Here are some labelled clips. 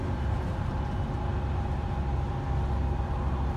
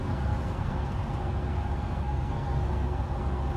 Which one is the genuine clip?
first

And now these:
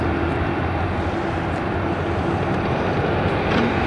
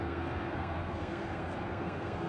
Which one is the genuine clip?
first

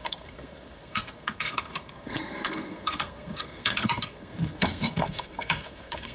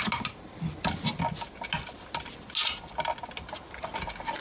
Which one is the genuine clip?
second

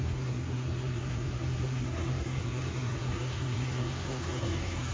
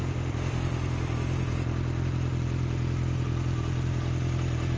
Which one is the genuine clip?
second